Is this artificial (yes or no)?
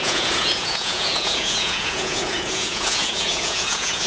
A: yes